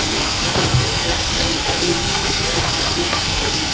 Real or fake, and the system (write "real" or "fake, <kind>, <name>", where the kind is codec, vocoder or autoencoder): fake, codec, SNAC